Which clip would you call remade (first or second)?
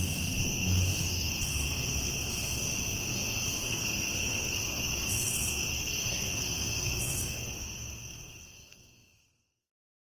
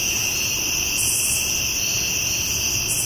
first